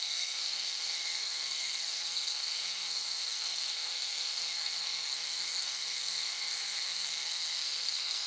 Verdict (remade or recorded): remade